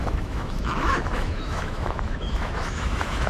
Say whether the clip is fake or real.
fake